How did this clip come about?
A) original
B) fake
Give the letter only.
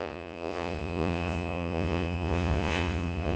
B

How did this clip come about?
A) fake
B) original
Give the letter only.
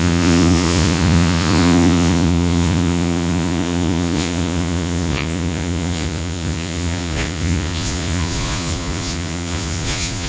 A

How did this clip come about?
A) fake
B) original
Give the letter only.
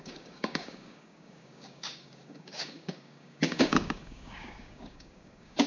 A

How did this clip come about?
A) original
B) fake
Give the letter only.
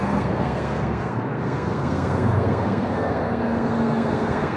B